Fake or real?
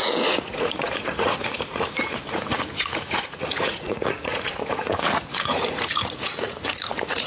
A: fake